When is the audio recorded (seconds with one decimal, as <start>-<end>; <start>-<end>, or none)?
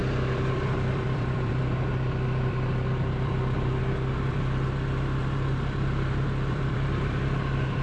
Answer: 1.5-1.9; 3.8-4.3